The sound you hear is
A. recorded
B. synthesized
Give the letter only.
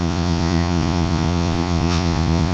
B